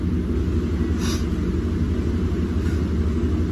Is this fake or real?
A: real